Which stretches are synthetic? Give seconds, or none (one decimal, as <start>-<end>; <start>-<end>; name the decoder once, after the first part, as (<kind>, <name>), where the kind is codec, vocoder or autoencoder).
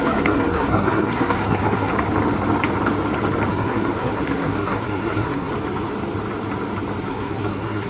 0.0-1.9 (codec, SNAC); 3.5-5.5; 7.1-7.9